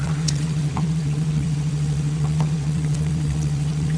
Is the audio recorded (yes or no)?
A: no